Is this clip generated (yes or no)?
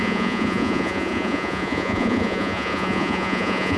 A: yes